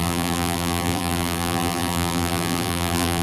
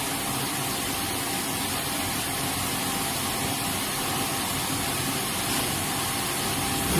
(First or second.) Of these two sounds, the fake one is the first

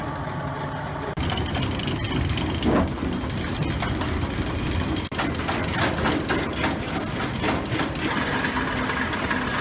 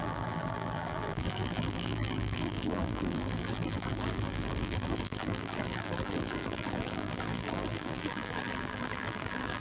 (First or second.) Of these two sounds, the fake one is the second